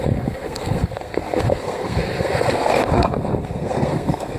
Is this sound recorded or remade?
remade